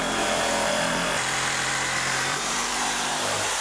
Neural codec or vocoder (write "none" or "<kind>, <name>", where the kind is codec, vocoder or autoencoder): vocoder, BigVGAN v2